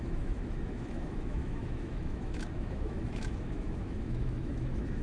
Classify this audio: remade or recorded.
remade